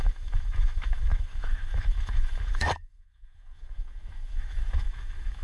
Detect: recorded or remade remade